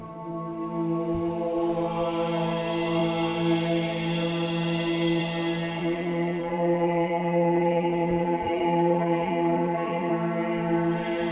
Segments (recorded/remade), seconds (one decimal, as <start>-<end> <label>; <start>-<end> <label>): 0.0-5.8 recorded; 5.8-10.1 remade; 10.1-11.3 recorded